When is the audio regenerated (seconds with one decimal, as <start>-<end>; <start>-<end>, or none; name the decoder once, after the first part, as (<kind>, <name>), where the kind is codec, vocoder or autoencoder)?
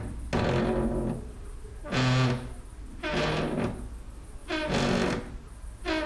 none